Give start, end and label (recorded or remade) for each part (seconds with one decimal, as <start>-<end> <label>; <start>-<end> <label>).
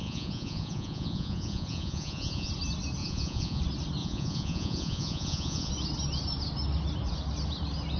0.0-2.5 remade; 2.5-3.0 recorded; 3.0-3.6 remade; 3.6-4.0 recorded; 4.0-5.7 remade; 5.7-8.0 recorded